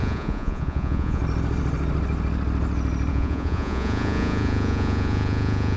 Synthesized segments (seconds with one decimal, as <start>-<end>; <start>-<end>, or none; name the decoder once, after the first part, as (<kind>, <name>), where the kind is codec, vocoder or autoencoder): 0.0-1.2 (vocoder, Vocos); 3.1-5.8

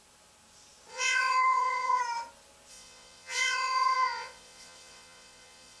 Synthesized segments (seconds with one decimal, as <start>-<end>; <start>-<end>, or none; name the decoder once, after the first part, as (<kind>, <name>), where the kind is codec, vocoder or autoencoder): 0.9-2.0 (vocoder, Vocos); 2.7-5.8

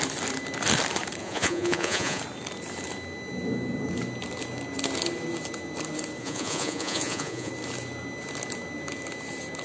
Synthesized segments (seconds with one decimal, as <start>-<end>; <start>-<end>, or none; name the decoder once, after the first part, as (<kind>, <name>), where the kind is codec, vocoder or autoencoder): 1.2-2.2 (vocoder, Vocos); 6.2-7.5

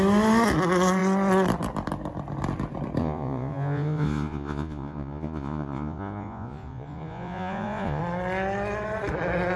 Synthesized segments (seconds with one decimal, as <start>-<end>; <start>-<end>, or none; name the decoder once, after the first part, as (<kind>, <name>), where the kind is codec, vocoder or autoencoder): 3.0-8.0 (vocoder, Vocos)

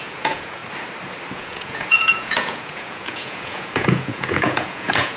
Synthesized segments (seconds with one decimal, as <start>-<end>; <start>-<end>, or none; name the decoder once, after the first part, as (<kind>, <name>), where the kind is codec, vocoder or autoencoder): 0.0-0.6 (vocoder, Vocos); 1.3-5.2

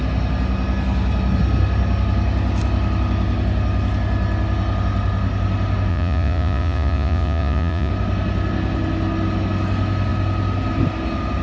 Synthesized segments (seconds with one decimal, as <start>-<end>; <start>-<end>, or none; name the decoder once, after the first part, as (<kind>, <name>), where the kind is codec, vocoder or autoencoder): 5.9-7.9 (vocoder, Vocos)

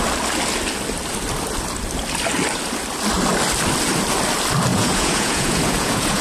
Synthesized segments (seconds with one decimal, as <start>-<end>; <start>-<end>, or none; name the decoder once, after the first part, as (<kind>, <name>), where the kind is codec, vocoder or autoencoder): 4.7-6.2 (vocoder, Vocos)

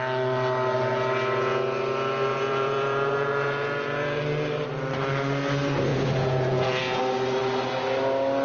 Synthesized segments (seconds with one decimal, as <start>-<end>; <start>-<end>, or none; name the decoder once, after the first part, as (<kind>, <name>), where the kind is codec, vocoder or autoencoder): 2.3-4.2 (vocoder, Vocos); 5.9-7.0